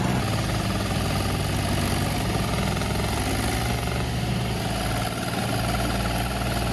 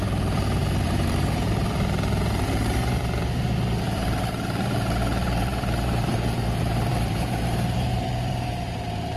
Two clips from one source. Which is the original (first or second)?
first